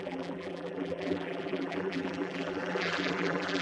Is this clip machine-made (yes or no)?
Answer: yes